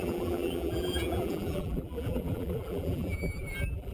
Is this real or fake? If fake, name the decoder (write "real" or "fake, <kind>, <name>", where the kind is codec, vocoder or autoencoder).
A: fake, vocoder, BigVGAN v2